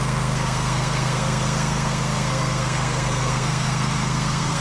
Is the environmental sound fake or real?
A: fake